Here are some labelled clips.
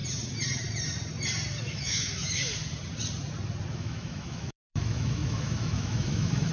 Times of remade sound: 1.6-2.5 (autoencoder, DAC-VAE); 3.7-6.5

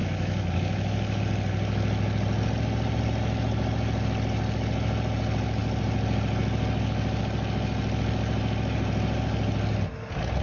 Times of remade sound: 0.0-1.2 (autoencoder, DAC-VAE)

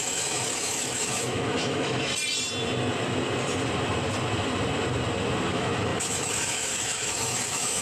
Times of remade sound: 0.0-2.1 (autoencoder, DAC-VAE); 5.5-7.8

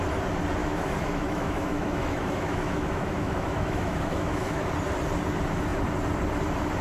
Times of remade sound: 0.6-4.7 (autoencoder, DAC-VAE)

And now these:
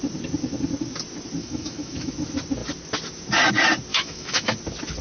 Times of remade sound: 1.4-2.1 (autoencoder, DAC-VAE); 3.9-4.5